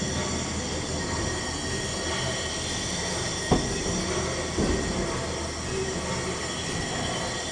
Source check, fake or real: real